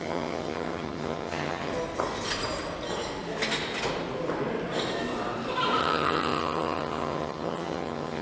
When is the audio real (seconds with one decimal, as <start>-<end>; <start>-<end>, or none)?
1.7-5.8